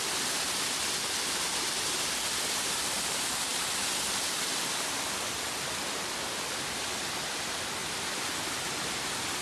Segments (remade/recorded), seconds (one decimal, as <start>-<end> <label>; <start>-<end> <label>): 0.0-9.4 recorded